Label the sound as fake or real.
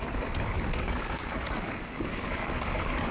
fake